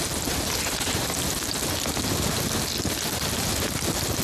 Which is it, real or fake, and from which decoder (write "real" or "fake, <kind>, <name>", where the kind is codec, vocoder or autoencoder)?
real